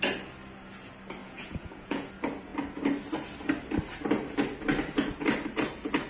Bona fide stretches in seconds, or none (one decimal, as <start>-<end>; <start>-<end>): 0.0-1.2; 2.1-6.1